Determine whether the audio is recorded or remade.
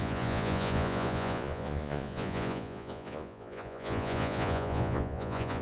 remade